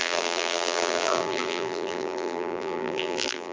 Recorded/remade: remade